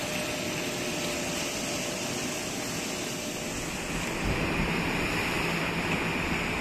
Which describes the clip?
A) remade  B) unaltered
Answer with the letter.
B